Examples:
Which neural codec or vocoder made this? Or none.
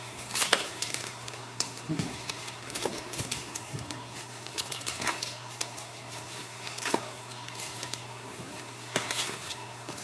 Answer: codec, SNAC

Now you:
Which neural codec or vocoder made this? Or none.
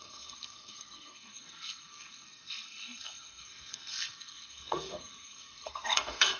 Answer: codec, SNAC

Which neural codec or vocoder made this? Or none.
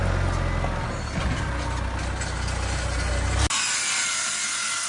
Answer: none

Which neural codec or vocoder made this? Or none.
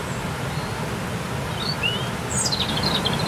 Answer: none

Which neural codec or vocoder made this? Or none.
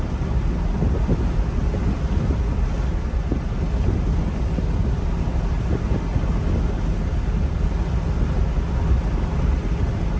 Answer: none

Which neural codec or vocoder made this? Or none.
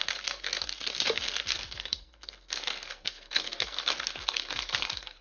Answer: codec, SNAC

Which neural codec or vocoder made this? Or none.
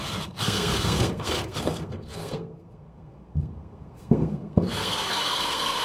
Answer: codec, SNAC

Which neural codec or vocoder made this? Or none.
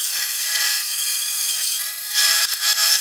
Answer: codec, SNAC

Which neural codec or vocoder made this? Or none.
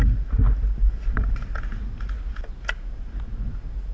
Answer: none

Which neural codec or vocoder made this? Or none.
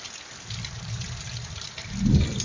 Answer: none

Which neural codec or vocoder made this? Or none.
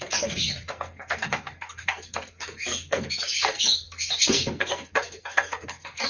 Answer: codec, SNAC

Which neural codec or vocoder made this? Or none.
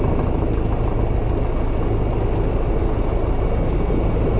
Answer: none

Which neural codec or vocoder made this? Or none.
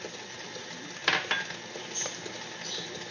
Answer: none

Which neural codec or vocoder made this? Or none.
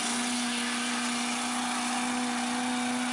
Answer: none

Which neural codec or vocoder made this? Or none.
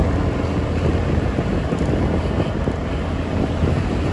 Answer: none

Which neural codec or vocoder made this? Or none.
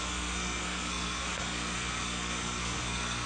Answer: codec, SNAC